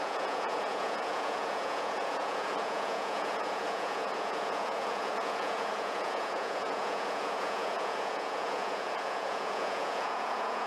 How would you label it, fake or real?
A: fake